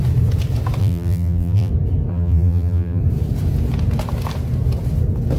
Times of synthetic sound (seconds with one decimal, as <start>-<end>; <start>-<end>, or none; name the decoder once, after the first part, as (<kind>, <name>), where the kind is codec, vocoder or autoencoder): 0.8-1.7 (vocoder, BigVGAN v2); 2.1-3.0